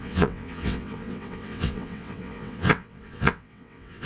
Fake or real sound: fake